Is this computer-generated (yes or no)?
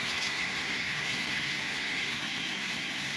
yes